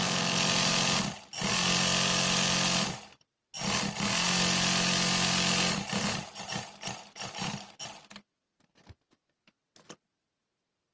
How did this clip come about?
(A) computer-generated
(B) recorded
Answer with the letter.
B